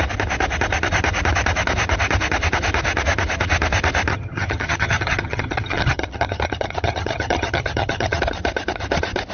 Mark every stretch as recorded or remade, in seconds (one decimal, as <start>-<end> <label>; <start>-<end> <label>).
0.0-4.1 recorded; 4.1-8.2 remade; 8.2-9.3 recorded